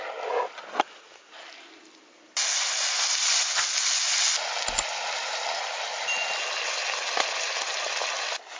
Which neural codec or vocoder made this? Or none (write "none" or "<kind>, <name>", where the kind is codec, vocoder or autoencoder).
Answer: none